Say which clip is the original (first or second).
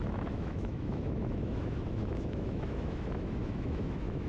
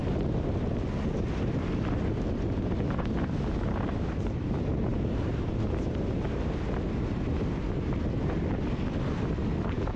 second